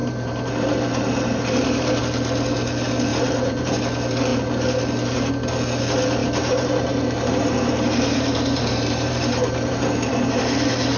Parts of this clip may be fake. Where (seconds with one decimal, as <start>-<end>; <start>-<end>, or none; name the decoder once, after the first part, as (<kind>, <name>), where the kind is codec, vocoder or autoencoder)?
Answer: 0.0-2.0 (vocoder, BigVGAN v2); 3.1-3.7; 6.2-10.4